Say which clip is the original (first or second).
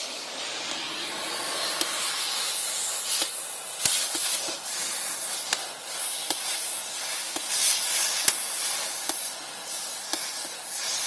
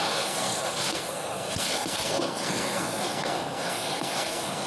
first